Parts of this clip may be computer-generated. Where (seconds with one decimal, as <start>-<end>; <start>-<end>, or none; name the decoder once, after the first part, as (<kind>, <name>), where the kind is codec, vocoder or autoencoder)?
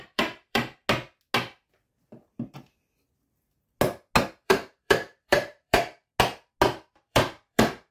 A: 0.0-0.8 (vocoder, BigVGAN v2); 4.3-6.1; 6.9-7.9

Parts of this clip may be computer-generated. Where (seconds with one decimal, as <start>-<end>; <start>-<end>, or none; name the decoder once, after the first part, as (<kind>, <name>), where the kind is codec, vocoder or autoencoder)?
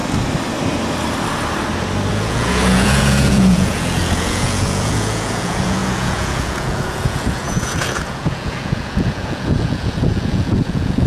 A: 2.1-11.1 (vocoder, Vocos)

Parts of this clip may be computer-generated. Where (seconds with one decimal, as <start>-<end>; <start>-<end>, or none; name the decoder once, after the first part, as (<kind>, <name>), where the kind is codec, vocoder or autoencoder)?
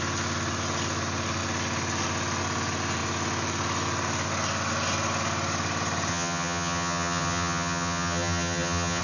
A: 6.1-9.0 (vocoder, HiFi-GAN)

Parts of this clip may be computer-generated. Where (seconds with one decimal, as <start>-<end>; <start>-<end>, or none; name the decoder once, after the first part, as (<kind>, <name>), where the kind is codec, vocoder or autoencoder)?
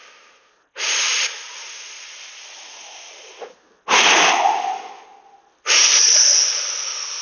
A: none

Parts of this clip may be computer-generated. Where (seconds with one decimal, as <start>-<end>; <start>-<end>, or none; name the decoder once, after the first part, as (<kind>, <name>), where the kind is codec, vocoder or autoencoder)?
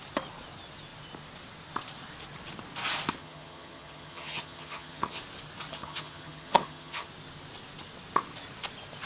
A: 3.2-5.2 (vocoder, HiFi-GAN); 5.7-7.1